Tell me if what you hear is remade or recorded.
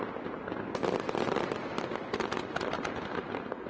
recorded